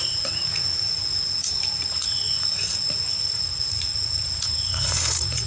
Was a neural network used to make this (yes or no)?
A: yes